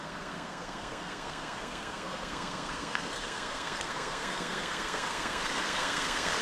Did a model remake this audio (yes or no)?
yes